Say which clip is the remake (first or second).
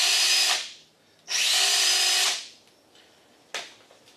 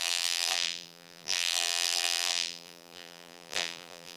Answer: second